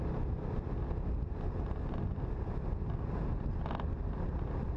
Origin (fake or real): real